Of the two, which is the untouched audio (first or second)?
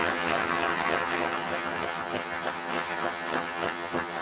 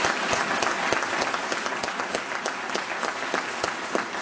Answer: second